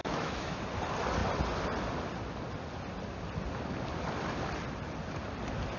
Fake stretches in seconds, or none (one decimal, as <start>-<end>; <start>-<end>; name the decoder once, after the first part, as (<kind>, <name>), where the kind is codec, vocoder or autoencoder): 0.0-0.6 (autoencoder, DAC-VAE)